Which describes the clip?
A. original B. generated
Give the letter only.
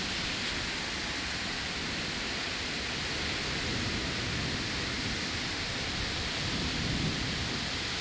A